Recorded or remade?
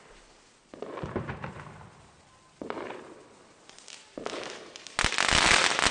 recorded